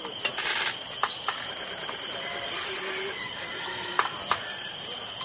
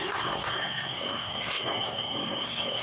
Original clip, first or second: first